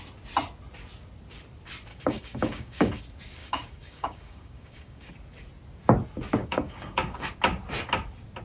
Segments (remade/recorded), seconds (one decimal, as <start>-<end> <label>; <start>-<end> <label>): 0.0-1.9 recorded; 1.9-3.0 remade; 3.0-3.4 recorded; 3.4-5.1 remade; 5.1-6.4 recorded; 6.4-7.3 remade; 7.3-8.4 recorded